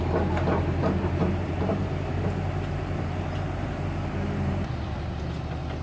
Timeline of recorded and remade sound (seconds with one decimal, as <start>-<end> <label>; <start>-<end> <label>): 0.0-1.2 recorded; 1.2-4.7 remade; 4.7-5.8 recorded